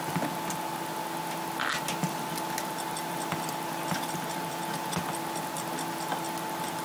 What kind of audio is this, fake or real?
real